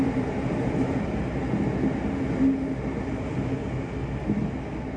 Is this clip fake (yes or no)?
no